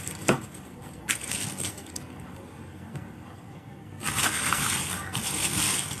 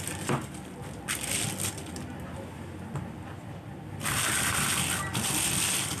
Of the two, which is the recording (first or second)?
second